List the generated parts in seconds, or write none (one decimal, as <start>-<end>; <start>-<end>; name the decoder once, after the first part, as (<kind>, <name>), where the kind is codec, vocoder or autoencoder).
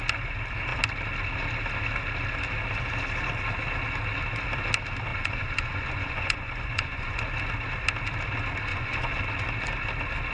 5.1-7.2 (vocoder, Vocos); 8.7-9.2